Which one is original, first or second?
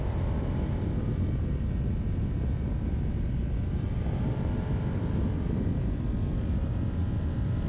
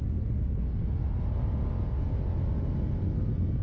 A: second